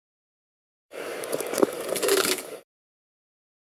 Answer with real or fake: fake